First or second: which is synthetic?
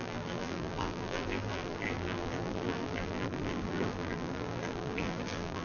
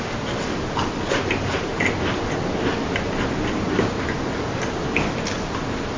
first